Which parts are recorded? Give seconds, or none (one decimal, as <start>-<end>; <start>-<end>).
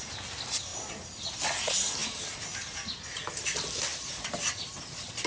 0.0-5.3